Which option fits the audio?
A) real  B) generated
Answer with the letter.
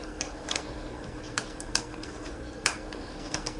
B